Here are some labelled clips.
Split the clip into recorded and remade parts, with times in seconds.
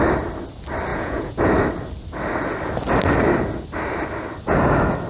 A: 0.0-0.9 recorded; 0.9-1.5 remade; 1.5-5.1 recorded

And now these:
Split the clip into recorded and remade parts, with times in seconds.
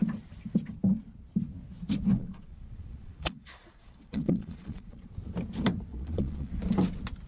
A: 0.0-2.2 recorded; 2.2-5.1 remade; 5.1-5.9 recorded; 5.9-6.5 remade; 6.5-7.3 recorded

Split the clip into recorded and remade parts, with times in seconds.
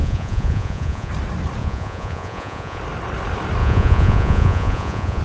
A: 0.0-1.1 remade; 1.1-1.6 recorded; 1.6-2.8 remade; 2.8-3.6 recorded; 3.6-5.2 remade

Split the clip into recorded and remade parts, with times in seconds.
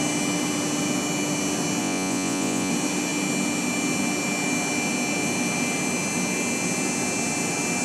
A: 0.0-1.8 recorded; 1.8-2.7 remade; 2.7-7.8 recorded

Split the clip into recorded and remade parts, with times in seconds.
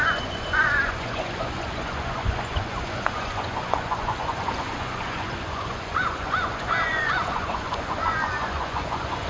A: 0.0-9.3 remade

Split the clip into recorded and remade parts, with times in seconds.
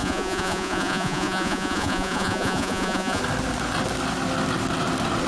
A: 0.0-3.2 remade; 3.2-5.3 recorded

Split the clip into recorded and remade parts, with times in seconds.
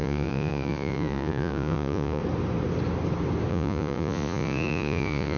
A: 0.0-2.2 remade; 2.2-3.5 recorded; 3.5-5.4 remade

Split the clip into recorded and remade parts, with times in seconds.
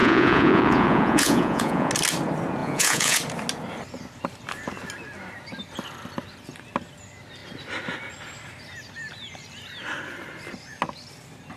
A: 0.0-1.9 remade; 1.9-2.6 recorded; 2.6-3.2 remade; 3.2-11.6 recorded